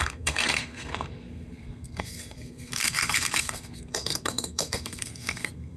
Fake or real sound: fake